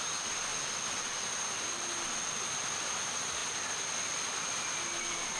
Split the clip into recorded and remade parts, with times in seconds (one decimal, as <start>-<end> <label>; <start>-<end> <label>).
0.0-5.4 recorded